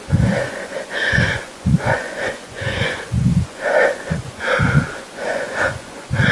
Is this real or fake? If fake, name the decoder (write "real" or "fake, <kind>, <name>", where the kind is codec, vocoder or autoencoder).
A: fake, vocoder, Vocos